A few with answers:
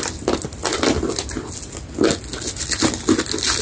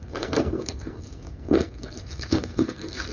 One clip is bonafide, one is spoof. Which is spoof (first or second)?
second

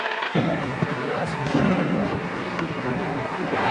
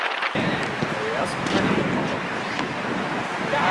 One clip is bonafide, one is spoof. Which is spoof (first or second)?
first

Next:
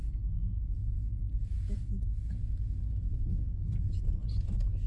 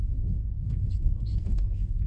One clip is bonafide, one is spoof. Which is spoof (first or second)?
second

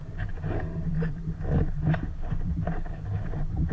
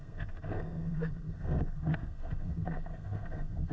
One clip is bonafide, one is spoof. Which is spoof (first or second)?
second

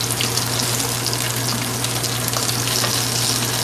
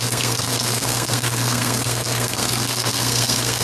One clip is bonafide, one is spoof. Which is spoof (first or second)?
second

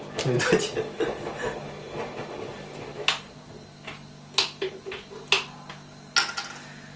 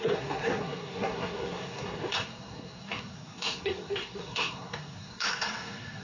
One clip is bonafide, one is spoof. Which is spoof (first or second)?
second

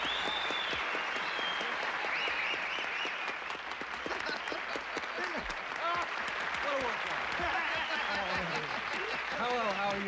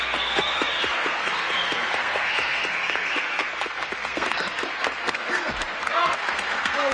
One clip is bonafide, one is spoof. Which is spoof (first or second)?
second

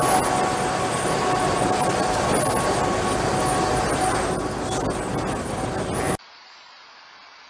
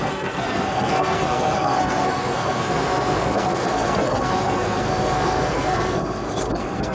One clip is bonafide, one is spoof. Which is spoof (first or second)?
second